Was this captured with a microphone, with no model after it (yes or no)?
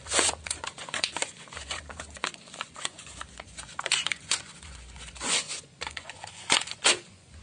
no